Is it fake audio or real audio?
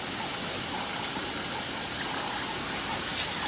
real